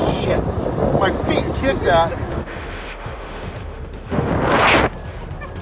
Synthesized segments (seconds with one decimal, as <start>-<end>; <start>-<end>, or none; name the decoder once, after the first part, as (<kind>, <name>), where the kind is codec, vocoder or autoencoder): 2.3-4.3 (autoencoder, DAC-VAE)